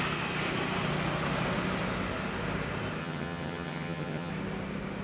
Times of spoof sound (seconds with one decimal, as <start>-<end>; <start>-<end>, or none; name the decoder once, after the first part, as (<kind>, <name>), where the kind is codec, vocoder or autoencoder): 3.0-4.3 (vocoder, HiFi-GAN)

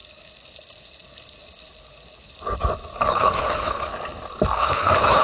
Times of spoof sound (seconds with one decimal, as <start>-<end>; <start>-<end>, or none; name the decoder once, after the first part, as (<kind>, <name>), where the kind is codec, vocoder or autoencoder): 3.1-3.9 (codec, HILCodec); 4.6-5.2

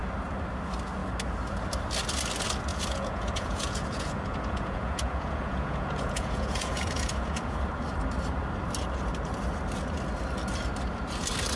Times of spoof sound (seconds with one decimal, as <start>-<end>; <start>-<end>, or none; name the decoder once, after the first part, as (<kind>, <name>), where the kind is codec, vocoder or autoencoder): 2.7-7.6 (vocoder, Vocos)